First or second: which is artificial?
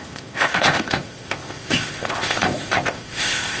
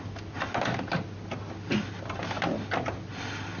first